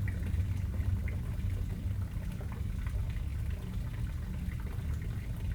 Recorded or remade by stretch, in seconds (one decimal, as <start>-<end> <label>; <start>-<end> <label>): 0.0-0.9 recorded; 0.9-2.6 remade; 2.6-5.5 recorded